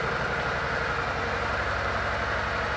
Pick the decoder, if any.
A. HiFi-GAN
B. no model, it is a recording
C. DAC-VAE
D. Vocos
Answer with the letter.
B